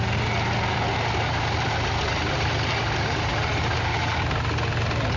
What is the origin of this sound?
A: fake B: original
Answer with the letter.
B